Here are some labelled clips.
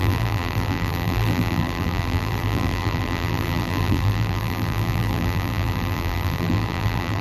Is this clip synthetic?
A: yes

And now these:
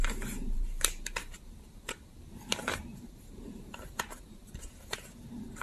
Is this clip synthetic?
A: yes